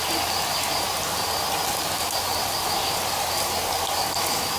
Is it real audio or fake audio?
real